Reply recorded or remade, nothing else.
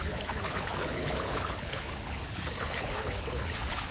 remade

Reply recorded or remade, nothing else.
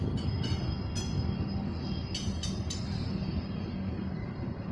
recorded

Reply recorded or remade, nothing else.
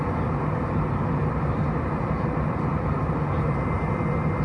recorded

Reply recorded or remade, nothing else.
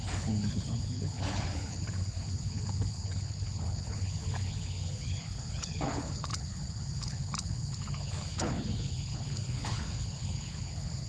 remade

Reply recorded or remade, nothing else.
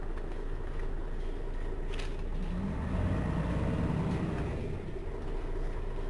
recorded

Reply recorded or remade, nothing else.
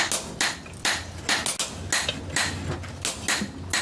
recorded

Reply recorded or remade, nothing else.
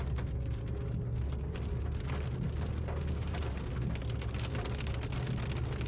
recorded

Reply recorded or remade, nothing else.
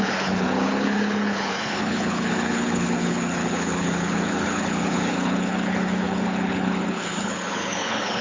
remade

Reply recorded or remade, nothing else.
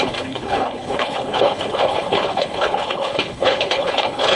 remade